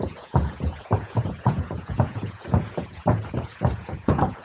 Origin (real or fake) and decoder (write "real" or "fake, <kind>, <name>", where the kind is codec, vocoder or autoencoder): fake, vocoder, Vocos